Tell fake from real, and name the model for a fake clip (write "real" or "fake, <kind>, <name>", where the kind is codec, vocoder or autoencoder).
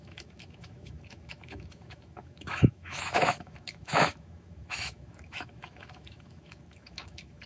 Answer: fake, autoencoder, DAC-VAE